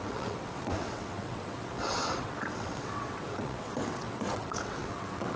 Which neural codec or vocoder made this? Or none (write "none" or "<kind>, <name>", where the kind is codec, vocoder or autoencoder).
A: vocoder, WaveNeXt